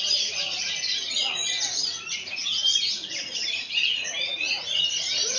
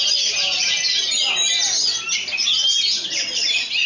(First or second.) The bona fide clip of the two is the second